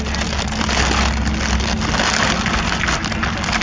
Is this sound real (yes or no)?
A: yes